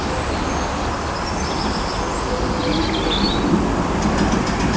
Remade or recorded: recorded